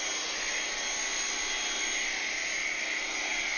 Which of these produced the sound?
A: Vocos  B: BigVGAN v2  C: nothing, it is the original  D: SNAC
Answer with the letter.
C